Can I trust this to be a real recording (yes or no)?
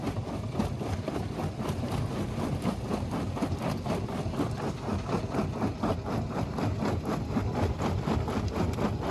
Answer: yes